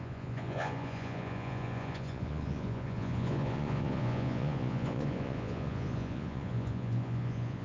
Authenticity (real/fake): fake